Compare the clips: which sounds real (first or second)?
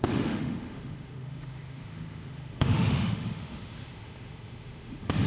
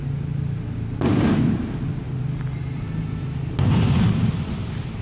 second